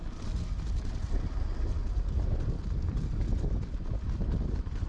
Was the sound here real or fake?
real